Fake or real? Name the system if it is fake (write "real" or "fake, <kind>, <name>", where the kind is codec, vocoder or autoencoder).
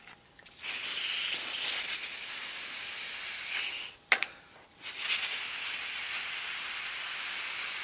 real